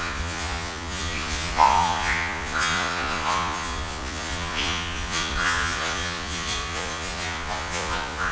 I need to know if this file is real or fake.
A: fake